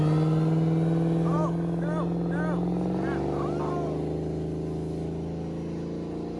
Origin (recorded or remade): recorded